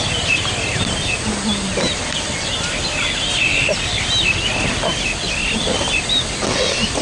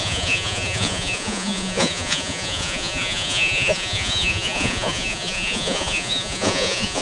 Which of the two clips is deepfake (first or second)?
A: second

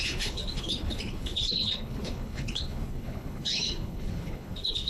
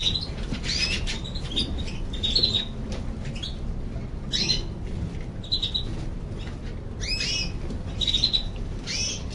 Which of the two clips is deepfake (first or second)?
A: first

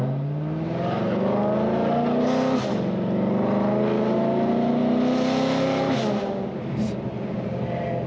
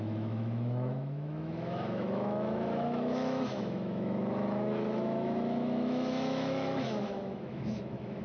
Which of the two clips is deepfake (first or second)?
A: second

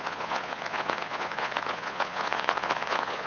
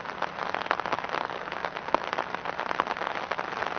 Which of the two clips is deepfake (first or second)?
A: first